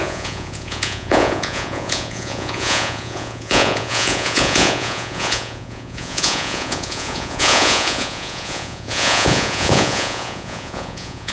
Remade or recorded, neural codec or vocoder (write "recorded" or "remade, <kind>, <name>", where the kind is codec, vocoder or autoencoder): remade, vocoder, Vocos